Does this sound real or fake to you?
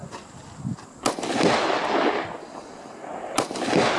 real